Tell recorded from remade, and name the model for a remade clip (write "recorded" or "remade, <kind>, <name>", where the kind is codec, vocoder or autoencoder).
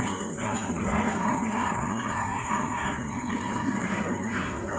remade, codec, SNAC